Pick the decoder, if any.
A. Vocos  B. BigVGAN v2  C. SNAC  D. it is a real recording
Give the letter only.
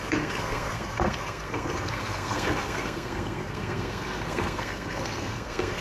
C